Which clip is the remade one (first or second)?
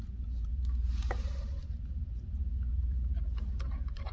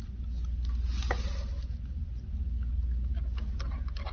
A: first